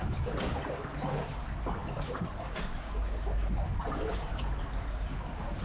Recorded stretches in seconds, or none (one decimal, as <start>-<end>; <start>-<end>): 0.0-5.6